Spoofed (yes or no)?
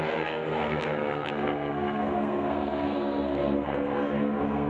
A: yes